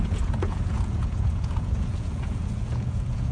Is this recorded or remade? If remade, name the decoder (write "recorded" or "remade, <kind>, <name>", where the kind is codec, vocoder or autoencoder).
remade, vocoder, Vocos